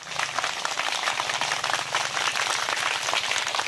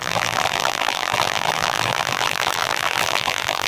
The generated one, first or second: second